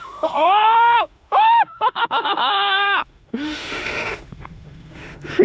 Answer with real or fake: fake